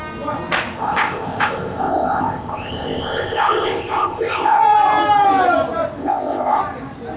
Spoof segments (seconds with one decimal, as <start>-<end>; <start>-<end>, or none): 0.8-4.6; 6.0-6.6